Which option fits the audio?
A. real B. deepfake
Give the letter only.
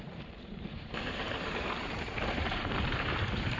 B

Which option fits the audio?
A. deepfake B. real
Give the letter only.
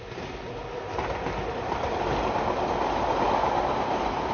B